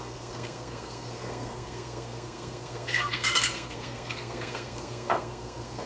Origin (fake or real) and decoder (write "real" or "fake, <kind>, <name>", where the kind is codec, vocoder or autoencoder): fake, codec, SNAC